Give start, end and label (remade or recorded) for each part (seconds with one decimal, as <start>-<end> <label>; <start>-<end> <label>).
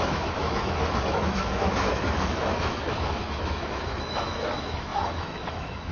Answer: 0.0-5.9 remade